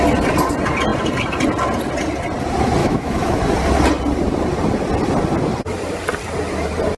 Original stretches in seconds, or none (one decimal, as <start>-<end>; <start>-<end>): 0.0-2.8; 3.4-7.0

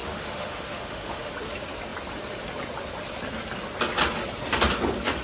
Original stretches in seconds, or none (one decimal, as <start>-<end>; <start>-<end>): 1.3-5.2

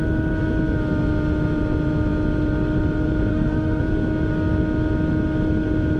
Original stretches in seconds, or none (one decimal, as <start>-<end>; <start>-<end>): 0.0-3.3; 3.8-6.0

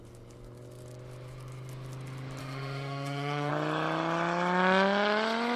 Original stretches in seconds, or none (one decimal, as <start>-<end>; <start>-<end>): 0.0-2.4; 3.5-5.6

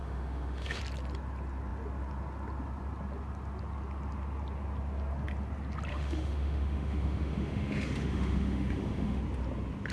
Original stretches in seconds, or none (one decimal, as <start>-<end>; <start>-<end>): 0.8-5.9; 9.2-9.9